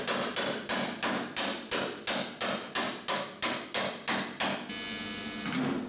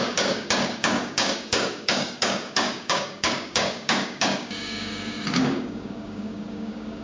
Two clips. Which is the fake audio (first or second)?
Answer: second